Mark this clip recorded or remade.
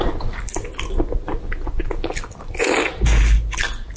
recorded